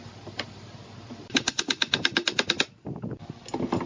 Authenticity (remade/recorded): recorded